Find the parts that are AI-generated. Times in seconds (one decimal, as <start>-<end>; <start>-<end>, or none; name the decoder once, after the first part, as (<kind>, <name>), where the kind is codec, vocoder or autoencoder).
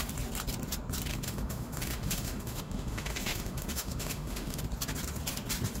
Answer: 1.1-4.6 (autoencoder, DAC-VAE)